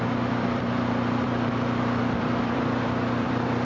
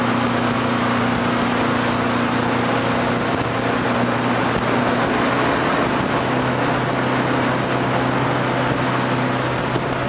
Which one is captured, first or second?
second